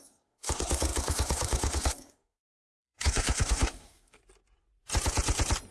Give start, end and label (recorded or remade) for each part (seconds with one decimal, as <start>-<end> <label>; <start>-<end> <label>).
0.0-4.2 remade; 4.2-5.7 recorded